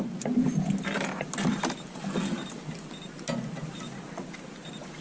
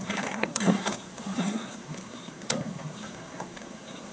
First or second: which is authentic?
first